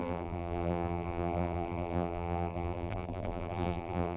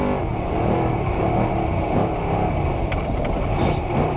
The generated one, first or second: first